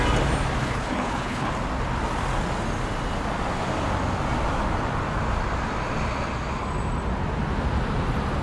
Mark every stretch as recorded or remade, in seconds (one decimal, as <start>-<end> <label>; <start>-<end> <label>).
0.0-0.6 recorded; 0.6-1.5 remade; 1.5-8.4 recorded